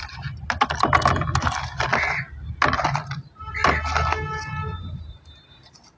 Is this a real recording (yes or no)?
yes